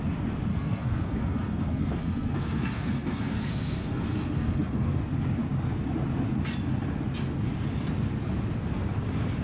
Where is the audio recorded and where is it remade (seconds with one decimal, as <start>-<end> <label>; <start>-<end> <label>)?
0.0-0.5 recorded; 0.5-5.0 remade; 5.0-9.4 recorded

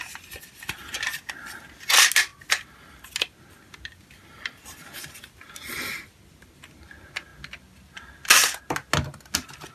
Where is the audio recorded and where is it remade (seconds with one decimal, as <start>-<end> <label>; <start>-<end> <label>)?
0.0-9.7 recorded